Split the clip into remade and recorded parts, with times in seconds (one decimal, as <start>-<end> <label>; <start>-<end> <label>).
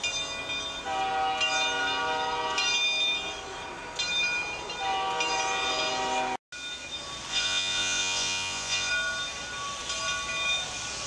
0.0-7.3 recorded; 7.3-8.9 remade; 8.9-11.1 recorded